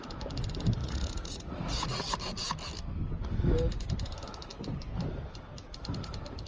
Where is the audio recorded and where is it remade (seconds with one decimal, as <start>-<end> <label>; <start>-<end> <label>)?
0.0-0.8 recorded; 0.8-2.1 remade; 2.1-6.5 recorded